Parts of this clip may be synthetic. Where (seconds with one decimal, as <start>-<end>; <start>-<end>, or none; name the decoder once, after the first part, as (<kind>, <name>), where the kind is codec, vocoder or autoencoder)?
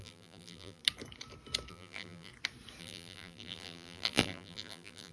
0.0-0.8 (vocoder, BigVGAN v2); 1.7-2.3; 2.8-5.1